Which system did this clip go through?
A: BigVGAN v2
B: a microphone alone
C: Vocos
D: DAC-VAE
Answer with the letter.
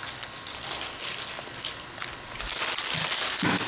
A